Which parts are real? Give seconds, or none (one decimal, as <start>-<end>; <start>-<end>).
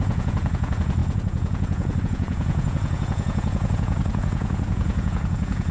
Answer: none